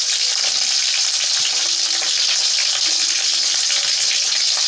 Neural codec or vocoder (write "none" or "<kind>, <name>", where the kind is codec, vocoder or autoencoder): none